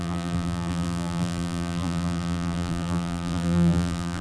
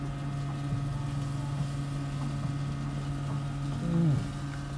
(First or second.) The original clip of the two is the second